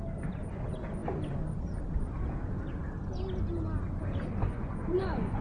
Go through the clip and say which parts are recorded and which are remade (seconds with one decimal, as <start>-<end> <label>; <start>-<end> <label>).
0.0-4.4 recorded; 4.4-5.4 remade